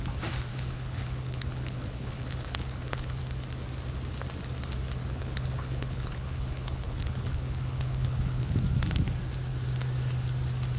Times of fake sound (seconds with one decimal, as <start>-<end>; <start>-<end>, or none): 0.5-3.2; 5.0-8.6